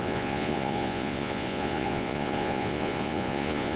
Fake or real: fake